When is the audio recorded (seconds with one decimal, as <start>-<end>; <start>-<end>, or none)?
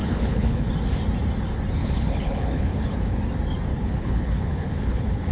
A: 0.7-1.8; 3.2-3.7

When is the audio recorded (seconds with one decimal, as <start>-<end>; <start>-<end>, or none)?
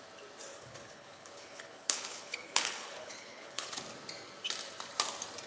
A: 0.0-0.5; 3.8-5.5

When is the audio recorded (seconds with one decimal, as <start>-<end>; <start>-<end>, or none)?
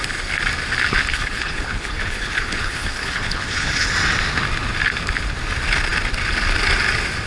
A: 0.0-1.1; 3.9-7.3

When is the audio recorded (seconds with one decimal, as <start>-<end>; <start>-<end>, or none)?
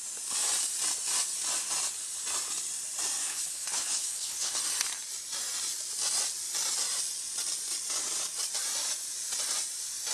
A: 0.0-3.2; 4.6-10.1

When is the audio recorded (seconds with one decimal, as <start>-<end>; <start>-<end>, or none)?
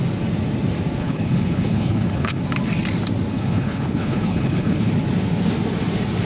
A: 0.0-1.0; 2.4-3.3; 4.9-6.3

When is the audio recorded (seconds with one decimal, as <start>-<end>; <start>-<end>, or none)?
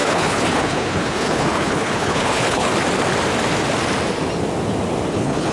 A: 2.7-5.1